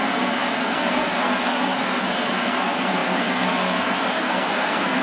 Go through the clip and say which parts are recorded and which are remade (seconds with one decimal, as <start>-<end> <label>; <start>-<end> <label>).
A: 0.0-5.0 remade